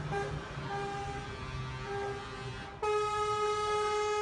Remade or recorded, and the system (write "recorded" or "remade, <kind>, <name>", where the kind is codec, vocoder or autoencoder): recorded